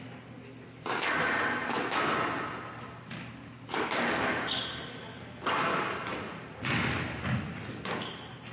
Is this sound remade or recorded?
recorded